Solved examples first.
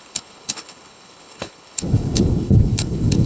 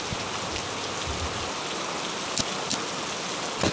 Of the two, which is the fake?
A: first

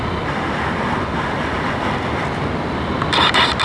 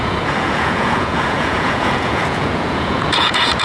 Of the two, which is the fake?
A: second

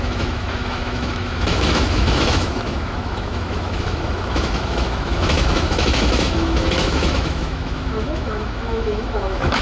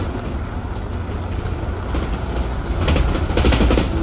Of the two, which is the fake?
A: first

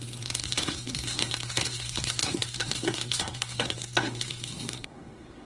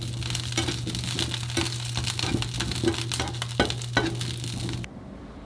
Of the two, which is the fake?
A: first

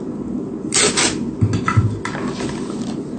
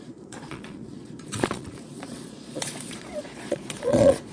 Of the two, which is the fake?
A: second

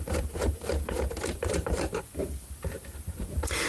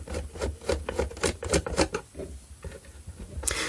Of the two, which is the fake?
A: first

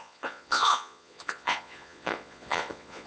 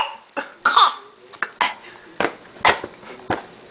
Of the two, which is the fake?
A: first